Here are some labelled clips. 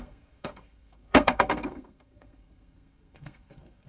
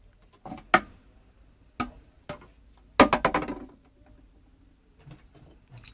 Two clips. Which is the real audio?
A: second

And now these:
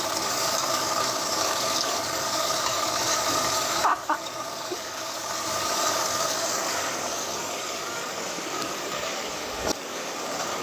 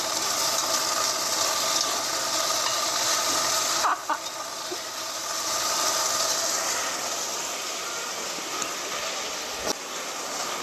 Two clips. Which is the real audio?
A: second